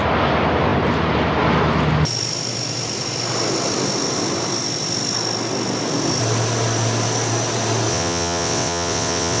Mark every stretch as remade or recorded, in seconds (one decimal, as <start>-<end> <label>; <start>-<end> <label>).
0.0-7.9 recorded; 7.9-9.4 remade